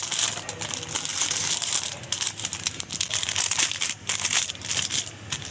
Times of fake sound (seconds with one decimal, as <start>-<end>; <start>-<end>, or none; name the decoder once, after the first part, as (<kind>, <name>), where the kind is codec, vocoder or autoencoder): 1.1-4.4 (vocoder, BigVGAN v2)